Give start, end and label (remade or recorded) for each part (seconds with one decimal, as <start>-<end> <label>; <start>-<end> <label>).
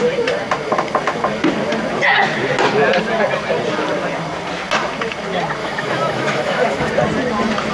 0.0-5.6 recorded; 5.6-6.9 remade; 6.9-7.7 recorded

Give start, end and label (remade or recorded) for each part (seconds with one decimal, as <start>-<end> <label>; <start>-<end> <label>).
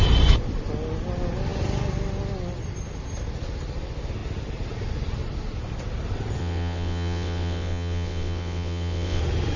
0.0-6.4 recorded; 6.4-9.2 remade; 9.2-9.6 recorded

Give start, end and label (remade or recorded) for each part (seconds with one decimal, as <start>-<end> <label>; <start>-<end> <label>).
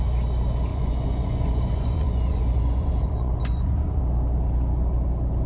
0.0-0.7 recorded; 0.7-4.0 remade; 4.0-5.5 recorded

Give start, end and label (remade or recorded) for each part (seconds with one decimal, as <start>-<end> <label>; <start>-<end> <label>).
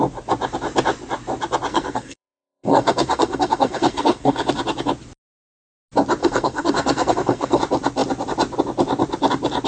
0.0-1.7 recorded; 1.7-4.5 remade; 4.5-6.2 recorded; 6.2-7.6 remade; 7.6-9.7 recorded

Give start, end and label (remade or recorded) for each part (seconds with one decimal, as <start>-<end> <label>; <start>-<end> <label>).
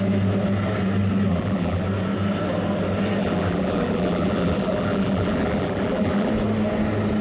0.0-1.3 recorded; 1.3-1.8 remade; 1.8-3.2 recorded; 3.2-6.3 remade; 6.3-7.2 recorded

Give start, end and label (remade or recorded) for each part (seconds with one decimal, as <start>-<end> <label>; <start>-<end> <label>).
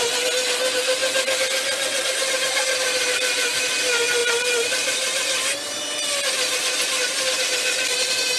0.0-4.2 recorded; 4.2-7.9 remade; 7.9-8.4 recorded